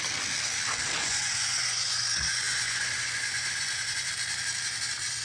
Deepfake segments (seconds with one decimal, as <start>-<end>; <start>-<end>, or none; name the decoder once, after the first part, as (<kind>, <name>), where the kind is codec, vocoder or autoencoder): 1.0-4.1 (vocoder, Vocos)